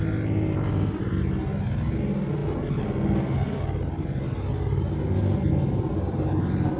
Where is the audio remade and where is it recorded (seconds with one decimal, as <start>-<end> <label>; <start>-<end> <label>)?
0.0-6.8 recorded